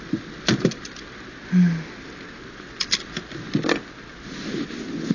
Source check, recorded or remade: recorded